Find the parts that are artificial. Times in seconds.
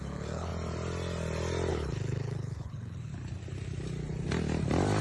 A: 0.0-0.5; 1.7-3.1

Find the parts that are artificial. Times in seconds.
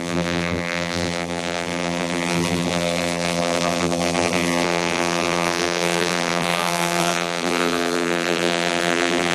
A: 0.0-9.3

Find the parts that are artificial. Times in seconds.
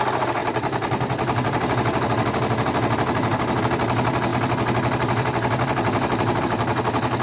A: none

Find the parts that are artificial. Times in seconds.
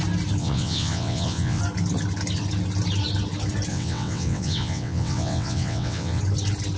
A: 0.4-1.6; 3.7-6.2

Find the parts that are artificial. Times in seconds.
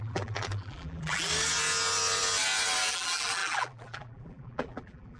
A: 0.0-1.3; 2.9-5.2